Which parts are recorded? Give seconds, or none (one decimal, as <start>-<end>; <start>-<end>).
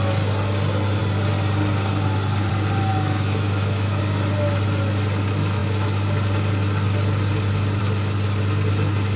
0.0-2.9; 4.0-9.2